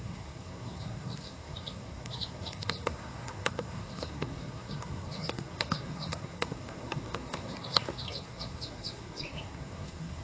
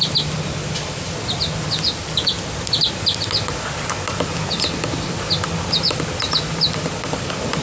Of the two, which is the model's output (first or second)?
first